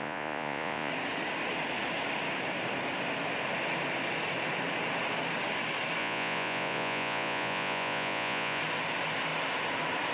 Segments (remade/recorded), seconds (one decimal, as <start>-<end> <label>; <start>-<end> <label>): 0.0-0.9 remade; 0.9-6.0 recorded; 6.0-8.6 remade; 8.6-10.1 recorded